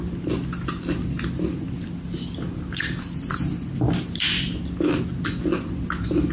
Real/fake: real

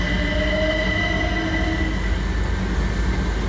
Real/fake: real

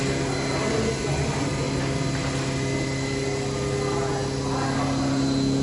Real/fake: real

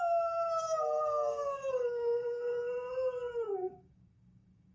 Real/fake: fake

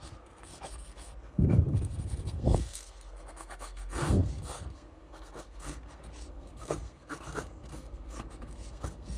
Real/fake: fake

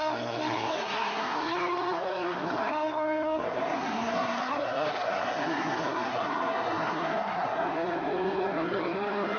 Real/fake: fake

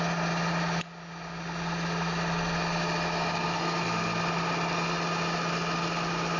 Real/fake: real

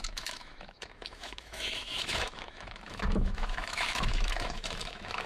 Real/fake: fake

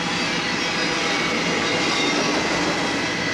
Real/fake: real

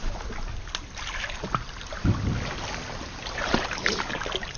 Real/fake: real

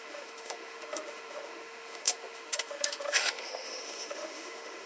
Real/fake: fake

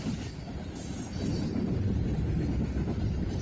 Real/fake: fake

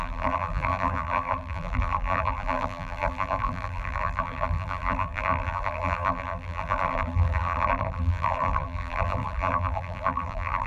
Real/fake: fake